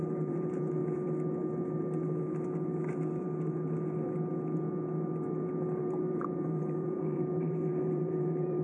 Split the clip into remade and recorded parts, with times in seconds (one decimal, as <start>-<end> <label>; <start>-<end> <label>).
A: 0.0-0.8 remade; 0.8-5.8 recorded; 5.8-8.6 remade